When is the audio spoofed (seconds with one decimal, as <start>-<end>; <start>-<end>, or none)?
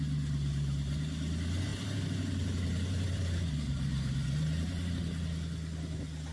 1.7-4.9